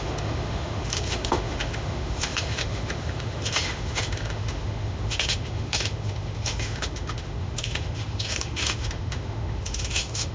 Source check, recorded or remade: remade